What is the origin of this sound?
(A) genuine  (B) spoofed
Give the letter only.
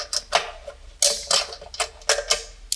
A